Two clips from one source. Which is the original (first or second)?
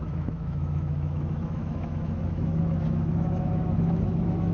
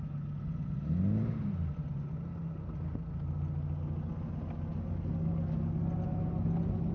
second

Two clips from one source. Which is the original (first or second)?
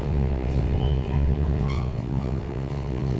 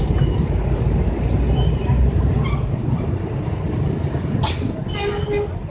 second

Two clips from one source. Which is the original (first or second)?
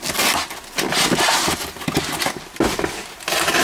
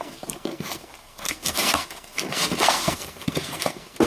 first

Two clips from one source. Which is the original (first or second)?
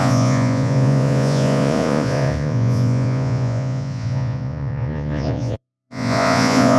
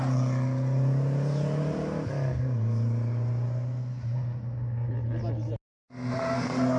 second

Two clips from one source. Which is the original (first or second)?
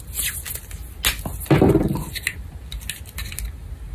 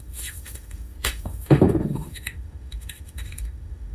first